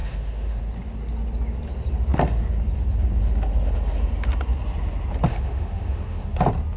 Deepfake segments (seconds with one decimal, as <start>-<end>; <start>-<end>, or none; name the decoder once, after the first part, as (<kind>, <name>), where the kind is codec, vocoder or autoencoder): 0.0-0.6 (autoencoder, DAC-VAE); 5.3-6.3